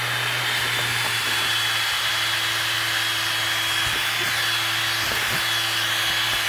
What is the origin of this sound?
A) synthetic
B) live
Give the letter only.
B